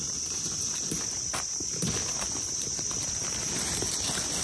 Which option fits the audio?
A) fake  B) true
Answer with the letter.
B